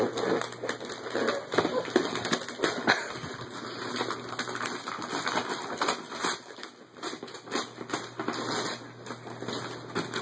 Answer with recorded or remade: recorded